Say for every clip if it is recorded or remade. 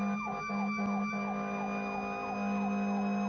recorded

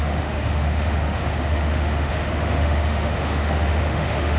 remade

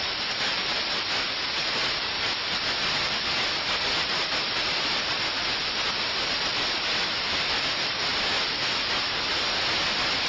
recorded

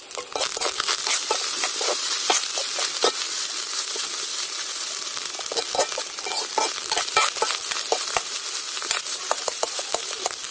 remade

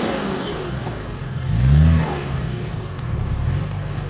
remade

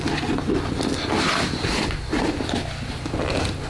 recorded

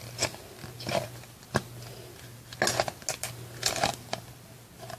recorded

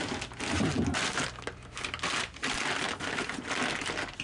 recorded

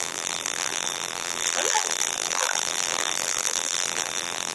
remade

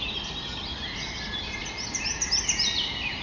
recorded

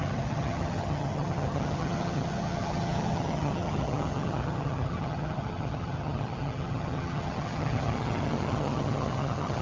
remade